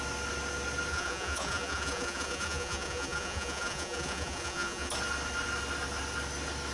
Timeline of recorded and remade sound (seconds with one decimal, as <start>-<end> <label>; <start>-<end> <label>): 0.0-0.9 recorded; 0.9-4.9 remade; 4.9-6.7 recorded